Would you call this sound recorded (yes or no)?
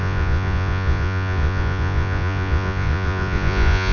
no